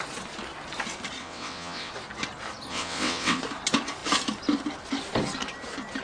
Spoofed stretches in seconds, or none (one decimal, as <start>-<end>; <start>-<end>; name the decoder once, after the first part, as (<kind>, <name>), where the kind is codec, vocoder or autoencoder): 1.2-1.9 (vocoder, WaveNeXt); 2.7-3.4